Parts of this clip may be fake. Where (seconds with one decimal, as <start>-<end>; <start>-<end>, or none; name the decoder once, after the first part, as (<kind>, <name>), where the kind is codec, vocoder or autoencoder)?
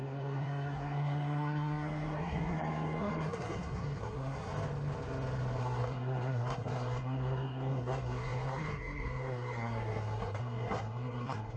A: 0.0-4.5 (codec, SNAC); 5.6-11.6